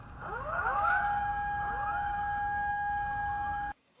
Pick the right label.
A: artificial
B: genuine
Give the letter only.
A